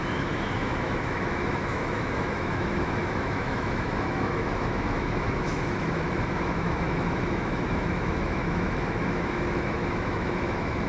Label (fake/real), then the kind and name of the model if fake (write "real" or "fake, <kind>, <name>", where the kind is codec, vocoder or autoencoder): fake, autoencoder, DAC-VAE